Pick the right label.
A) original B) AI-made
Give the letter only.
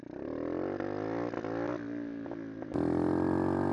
A